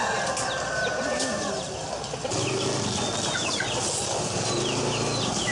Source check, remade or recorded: recorded